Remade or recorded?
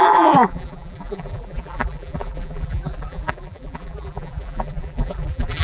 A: remade